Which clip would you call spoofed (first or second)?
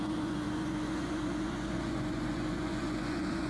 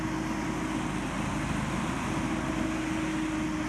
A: first